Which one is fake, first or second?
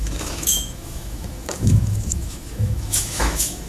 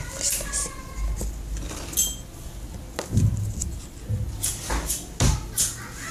first